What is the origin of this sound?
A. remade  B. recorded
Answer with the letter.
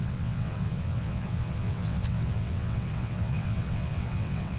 A